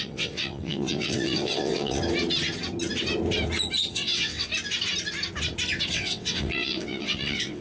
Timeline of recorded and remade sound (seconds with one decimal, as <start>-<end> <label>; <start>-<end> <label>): 0.0-2.0 remade; 2.0-3.9 recorded; 3.9-4.5 remade; 4.5-5.9 recorded; 5.9-7.6 remade